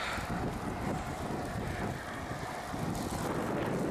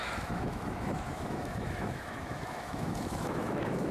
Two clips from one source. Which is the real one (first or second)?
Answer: first